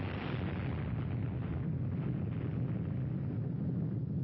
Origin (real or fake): real